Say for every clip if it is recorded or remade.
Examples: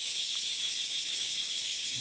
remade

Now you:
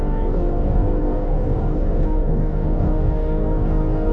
remade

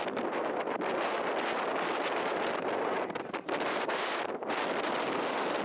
recorded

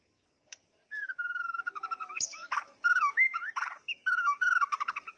remade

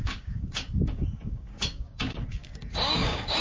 remade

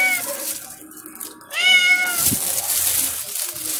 recorded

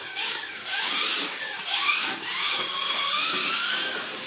remade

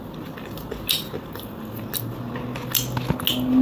recorded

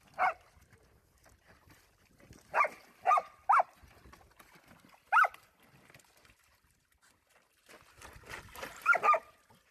recorded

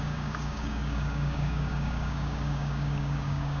remade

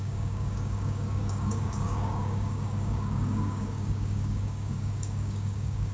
remade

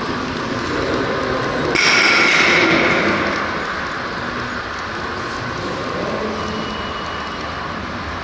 recorded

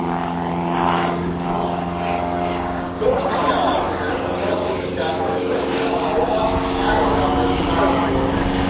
remade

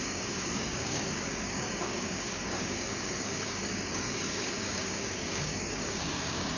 remade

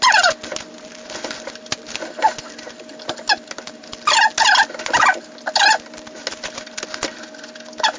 recorded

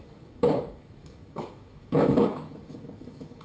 remade